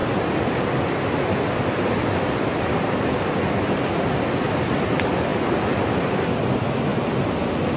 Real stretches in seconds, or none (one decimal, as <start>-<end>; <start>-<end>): 0.0-7.8